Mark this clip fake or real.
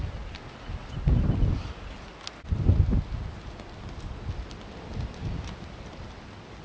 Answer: real